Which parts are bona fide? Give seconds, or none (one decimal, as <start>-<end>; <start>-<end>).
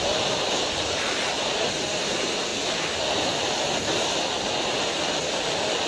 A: 0.0-5.9